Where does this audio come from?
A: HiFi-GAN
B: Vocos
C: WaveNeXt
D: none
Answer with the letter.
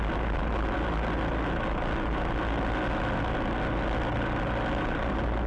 D